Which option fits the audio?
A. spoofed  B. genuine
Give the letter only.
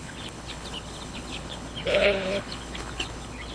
A